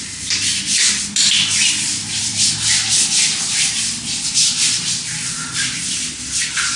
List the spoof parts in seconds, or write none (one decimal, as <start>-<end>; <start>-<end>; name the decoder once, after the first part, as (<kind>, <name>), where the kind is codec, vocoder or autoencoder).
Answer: none

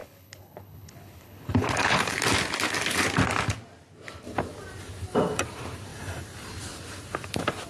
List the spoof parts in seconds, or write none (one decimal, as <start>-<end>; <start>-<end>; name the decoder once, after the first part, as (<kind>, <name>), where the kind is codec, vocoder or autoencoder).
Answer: 0.0-2.2 (codec, HILCodec)